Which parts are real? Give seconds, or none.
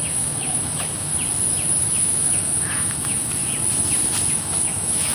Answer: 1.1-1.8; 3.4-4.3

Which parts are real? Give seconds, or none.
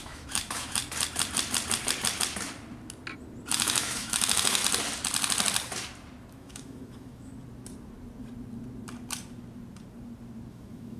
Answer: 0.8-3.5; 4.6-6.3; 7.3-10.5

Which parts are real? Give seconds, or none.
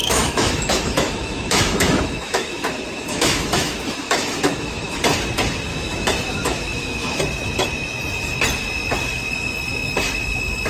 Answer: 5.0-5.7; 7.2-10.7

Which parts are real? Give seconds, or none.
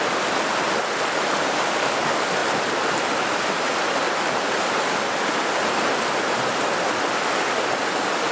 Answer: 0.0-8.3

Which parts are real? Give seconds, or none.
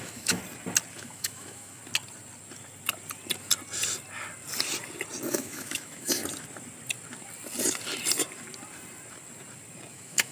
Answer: 0.4-0.9; 1.8-5.3; 6.2-9.9